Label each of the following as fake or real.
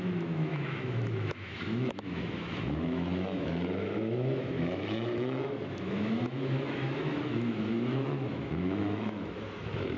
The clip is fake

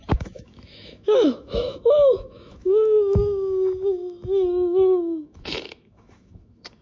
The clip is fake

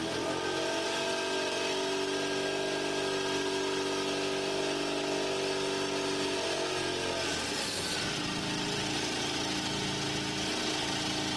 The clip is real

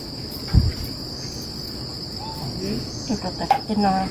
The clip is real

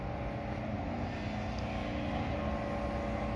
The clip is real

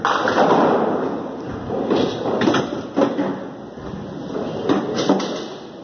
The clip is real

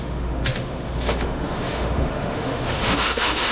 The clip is fake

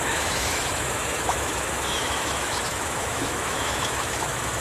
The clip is fake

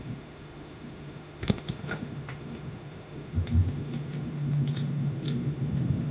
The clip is fake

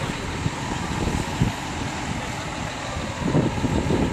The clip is real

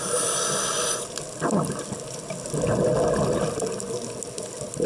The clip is real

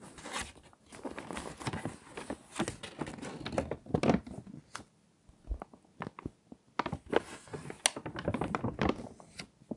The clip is real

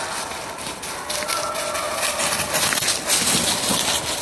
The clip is real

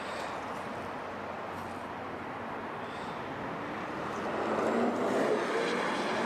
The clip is real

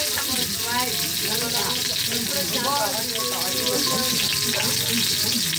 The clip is real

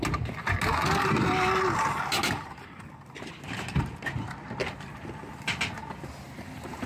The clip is real